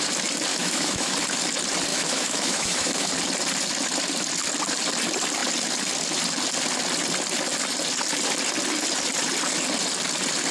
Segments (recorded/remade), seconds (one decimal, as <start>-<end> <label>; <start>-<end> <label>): 0.0-0.5 recorded; 0.5-1.1 remade; 1.1-1.9 recorded; 1.9-3.1 remade; 3.1-10.5 recorded